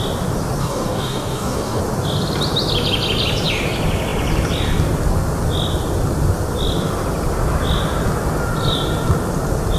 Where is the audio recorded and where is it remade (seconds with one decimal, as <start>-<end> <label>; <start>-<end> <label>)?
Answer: 0.0-0.6 recorded; 0.6-1.8 remade; 1.8-9.8 recorded